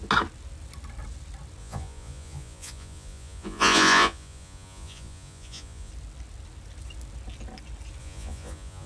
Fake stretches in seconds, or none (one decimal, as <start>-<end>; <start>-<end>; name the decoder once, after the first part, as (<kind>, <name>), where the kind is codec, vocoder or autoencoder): 1.6-5.9 (vocoder, Vocos); 8.0-8.9